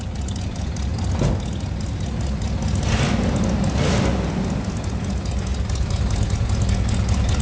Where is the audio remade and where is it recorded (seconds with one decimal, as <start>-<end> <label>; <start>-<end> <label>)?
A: 0.0-7.4 recorded